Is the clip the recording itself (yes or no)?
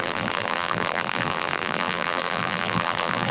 no